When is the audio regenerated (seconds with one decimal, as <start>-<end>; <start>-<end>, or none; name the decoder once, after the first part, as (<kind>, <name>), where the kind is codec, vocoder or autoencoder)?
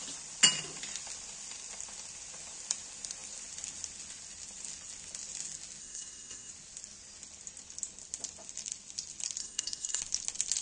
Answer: 5.8-6.5 (codec, SNAC); 9.4-10.0